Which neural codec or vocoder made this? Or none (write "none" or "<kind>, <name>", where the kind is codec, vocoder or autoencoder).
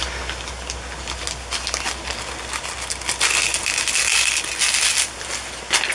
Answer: none